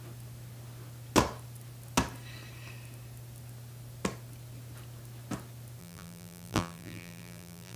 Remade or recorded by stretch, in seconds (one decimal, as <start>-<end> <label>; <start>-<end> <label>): 0.0-5.8 recorded; 5.8-7.8 remade